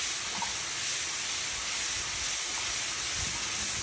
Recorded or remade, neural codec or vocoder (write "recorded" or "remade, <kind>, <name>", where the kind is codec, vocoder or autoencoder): recorded